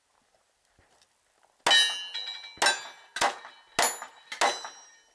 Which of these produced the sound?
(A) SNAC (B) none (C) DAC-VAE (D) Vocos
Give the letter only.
B